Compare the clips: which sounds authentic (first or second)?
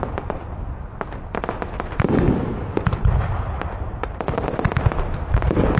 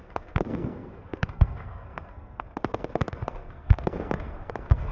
first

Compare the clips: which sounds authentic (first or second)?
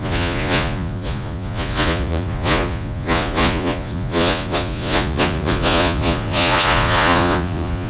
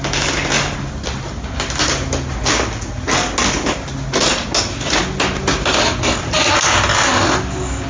second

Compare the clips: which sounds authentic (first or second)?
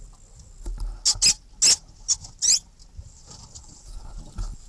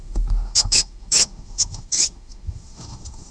first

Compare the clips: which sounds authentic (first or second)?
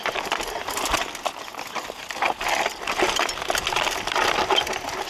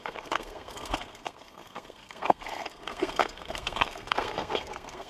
first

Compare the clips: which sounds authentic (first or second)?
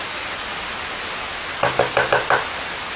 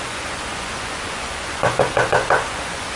first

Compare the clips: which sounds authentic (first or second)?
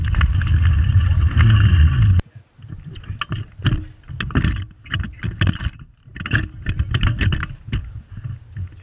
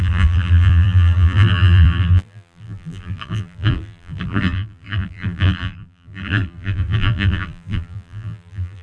first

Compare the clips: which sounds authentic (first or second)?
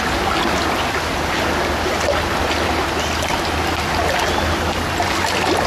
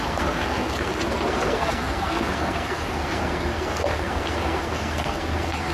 first